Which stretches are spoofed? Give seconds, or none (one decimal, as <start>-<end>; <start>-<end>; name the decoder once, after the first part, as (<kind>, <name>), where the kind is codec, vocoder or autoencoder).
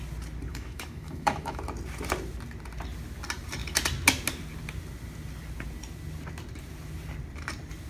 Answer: 0.5-1.6 (autoencoder, DAC-VAE)